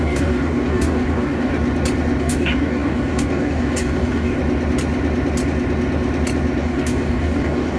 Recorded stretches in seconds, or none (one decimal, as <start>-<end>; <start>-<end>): 1.5-2.2; 4.4-6.6